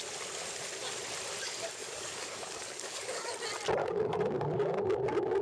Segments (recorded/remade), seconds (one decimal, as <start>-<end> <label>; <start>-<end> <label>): 0.0-1.8 recorded; 1.8-3.3 remade; 3.3-3.8 recorded; 3.8-5.4 remade